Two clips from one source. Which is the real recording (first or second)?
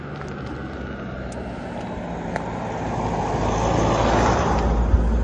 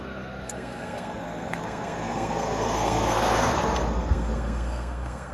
first